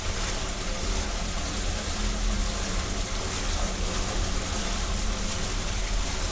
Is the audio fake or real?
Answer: real